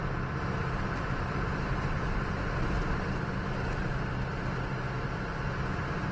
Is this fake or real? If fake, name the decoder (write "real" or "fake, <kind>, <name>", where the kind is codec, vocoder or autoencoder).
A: real